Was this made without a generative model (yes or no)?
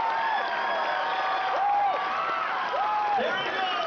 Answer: yes